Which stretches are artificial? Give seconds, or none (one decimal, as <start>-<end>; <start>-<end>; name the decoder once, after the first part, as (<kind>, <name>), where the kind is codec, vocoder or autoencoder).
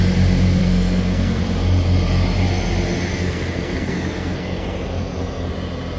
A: 0.6-1.4 (codec, SNAC); 3.1-5.5